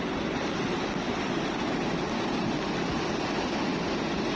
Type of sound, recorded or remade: recorded